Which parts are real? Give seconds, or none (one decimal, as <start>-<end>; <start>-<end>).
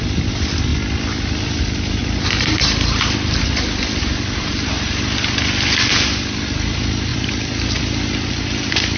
0.0-2.0; 4.5-7.1; 7.8-9.0